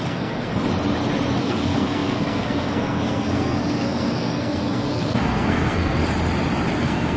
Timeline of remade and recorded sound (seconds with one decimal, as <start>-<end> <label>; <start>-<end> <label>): 0.0-0.5 remade; 0.5-1.4 recorded; 1.4-6.0 remade; 6.0-6.8 recorded; 6.8-7.2 remade